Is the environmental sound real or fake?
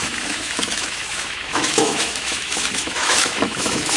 fake